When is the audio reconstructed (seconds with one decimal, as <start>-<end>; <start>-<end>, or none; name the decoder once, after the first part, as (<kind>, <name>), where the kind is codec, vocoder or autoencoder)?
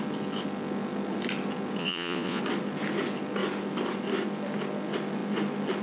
1.8-2.4 (vocoder, Vocos)